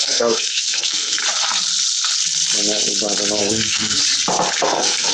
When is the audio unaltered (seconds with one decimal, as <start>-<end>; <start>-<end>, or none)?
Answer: 1.2-3.4; 4.0-4.6